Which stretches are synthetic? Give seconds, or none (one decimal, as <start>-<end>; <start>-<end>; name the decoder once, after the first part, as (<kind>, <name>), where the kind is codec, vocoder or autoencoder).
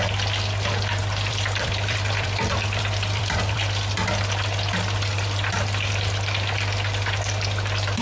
1.0-3.6 (vocoder, BigVGAN v2)